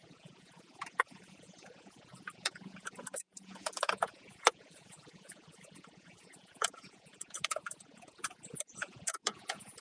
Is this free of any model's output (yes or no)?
no